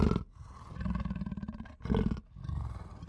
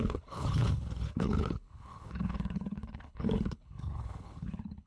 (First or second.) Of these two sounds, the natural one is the first